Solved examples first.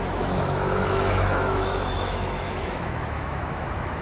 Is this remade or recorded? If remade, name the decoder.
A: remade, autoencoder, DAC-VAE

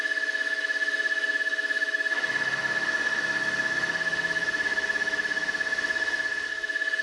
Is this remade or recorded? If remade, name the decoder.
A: remade, autoencoder, DAC-VAE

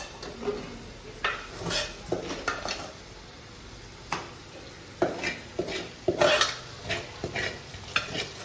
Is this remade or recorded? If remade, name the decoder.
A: recorded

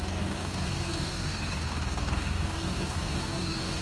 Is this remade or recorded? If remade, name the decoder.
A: remade, codec, DAC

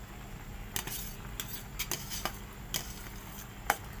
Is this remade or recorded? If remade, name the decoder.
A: recorded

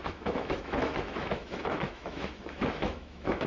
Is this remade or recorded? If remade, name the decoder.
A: remade, autoencoder, DAC-VAE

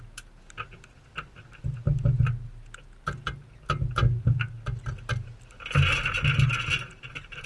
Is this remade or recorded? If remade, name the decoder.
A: recorded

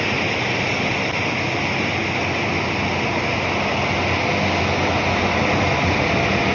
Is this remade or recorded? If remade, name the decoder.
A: recorded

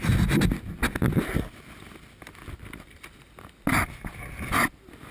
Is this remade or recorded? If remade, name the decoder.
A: recorded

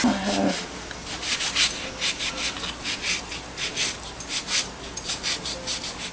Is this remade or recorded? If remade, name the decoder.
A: recorded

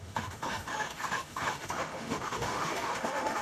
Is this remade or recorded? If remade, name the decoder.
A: remade, autoencoder, DAC-VAE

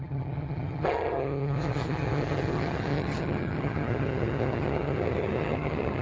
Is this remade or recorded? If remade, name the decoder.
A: remade, vocoder, HiFi-GAN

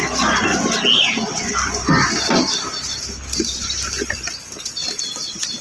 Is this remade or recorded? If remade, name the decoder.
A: recorded